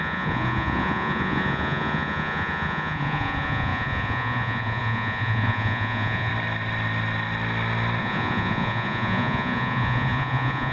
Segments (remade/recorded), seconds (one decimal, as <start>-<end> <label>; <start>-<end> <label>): 0.0-6.3 remade; 6.3-8.0 recorded; 8.0-10.7 remade